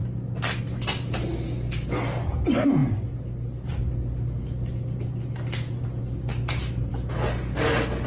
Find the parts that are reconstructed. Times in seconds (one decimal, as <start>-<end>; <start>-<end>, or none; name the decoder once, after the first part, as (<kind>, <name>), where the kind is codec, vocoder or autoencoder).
6.3-6.9 (vocoder, BigVGAN v2)